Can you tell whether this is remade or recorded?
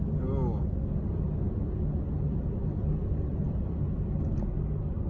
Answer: recorded